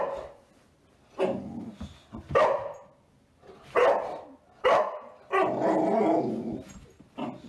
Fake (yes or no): no